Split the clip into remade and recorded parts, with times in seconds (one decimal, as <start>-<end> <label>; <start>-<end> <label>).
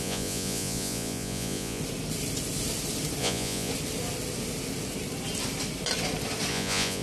0.0-1.8 remade; 1.8-3.2 recorded; 3.2-3.7 remade; 3.7-6.5 recorded; 6.5-7.0 remade